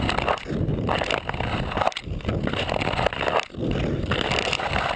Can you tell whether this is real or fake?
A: real